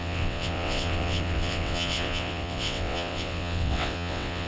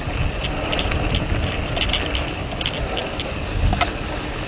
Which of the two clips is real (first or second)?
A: second